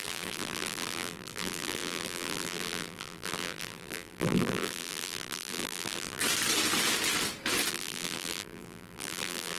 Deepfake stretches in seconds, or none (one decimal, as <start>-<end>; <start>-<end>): 0.0-6.2; 7.7-9.6

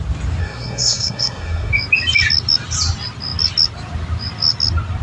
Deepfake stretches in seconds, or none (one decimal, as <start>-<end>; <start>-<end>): 0.4-1.7

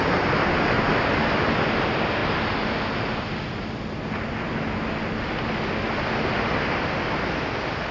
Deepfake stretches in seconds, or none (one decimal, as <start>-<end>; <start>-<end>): none

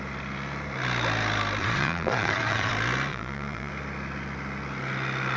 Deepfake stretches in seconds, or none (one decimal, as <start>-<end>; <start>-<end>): 1.6-2.7; 3.1-3.7